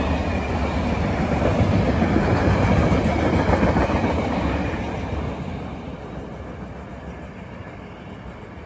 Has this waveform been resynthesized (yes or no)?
no